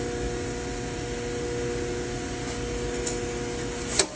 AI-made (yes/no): no